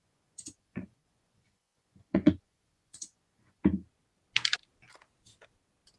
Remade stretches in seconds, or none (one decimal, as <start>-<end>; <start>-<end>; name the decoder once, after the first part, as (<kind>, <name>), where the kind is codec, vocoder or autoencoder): 0.0-3.6 (vocoder, Vocos)